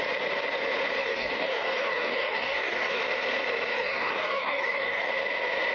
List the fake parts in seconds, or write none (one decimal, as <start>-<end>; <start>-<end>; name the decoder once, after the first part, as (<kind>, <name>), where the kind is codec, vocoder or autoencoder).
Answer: 1.0-3.0 (codec, DAC); 3.7-5.1